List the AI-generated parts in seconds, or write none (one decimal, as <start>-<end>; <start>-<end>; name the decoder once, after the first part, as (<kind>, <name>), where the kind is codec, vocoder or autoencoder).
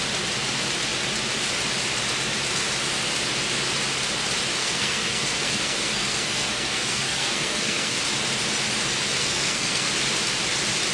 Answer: 4.6-8.0 (codec, SNAC); 9.2-9.9